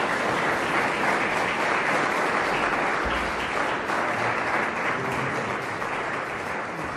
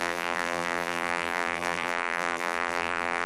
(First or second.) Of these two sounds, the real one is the first